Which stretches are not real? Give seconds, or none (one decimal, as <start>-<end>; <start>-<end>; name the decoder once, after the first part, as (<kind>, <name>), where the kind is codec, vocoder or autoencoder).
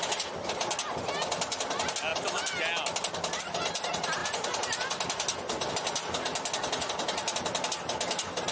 none